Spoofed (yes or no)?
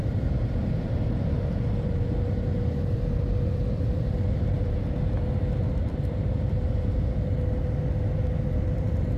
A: yes